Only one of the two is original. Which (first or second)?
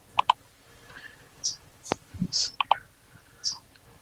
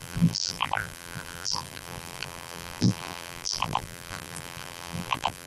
first